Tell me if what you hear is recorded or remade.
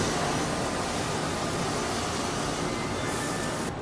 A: recorded